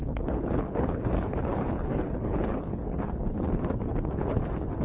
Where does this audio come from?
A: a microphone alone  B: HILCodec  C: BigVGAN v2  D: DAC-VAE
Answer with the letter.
B